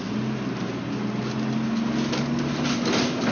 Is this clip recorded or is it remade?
recorded